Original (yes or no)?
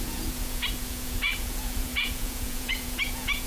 no